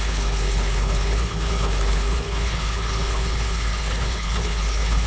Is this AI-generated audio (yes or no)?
yes